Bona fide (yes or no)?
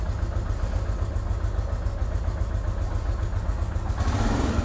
yes